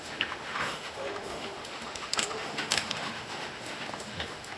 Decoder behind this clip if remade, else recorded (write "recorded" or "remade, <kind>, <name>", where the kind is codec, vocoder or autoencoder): remade, autoencoder, DAC-VAE